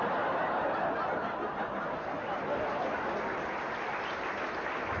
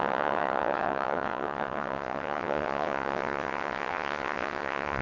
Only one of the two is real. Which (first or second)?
first